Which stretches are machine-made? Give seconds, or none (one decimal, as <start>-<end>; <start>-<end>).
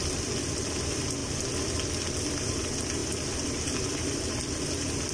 none